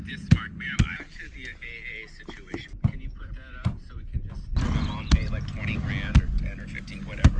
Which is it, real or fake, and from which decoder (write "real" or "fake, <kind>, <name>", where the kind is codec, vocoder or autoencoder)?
real